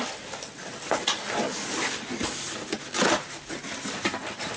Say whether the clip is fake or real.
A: real